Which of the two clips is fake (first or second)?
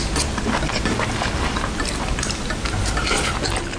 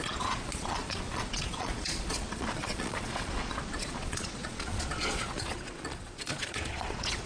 second